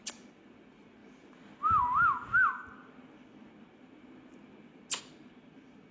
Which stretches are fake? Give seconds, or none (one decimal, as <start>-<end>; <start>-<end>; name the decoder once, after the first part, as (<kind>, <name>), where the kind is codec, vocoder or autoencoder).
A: none